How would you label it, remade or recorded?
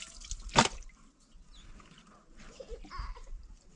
recorded